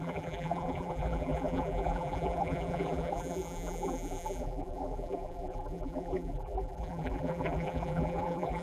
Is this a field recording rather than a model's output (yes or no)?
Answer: no